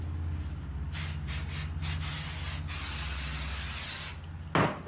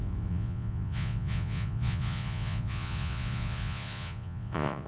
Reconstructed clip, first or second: second